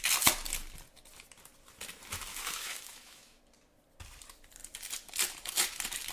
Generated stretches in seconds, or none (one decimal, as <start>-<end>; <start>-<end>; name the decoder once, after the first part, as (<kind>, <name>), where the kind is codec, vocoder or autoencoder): 2.3-3.4 (autoencoder, DAC-VAE)